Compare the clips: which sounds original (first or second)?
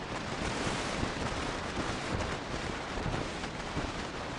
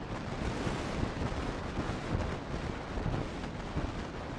second